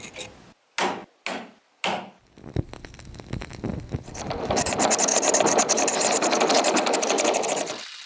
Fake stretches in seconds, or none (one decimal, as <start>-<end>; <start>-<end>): none